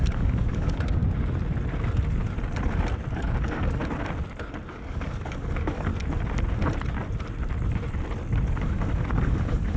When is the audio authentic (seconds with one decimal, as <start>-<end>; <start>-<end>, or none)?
1.0-3.1; 3.8-4.7; 5.9-8.5